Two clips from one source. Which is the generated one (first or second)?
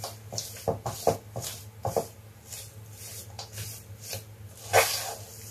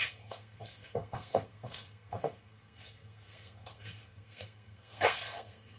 second